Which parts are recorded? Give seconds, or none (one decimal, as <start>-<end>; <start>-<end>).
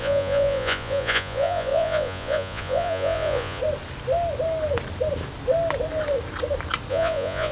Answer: 3.6-6.9